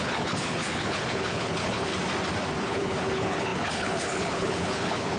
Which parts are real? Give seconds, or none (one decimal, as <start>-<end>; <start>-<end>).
1.9-2.6